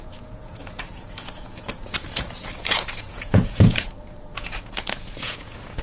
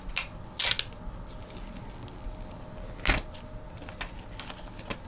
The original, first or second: second